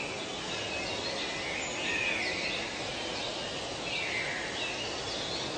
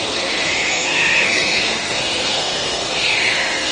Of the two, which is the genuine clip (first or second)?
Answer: first